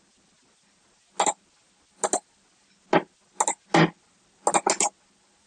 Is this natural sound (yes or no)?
yes